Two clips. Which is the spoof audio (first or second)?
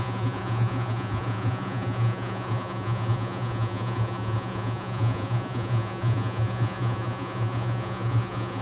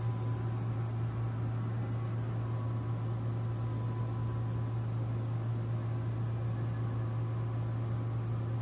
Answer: first